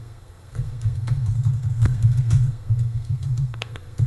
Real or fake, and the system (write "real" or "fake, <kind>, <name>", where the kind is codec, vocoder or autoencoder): fake, codec, SNAC